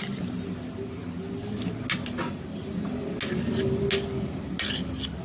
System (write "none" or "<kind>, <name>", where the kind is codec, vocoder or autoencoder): none